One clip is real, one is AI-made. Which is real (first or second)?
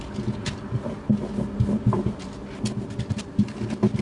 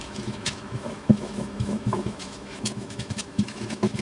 first